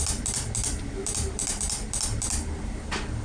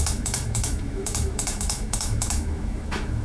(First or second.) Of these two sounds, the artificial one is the second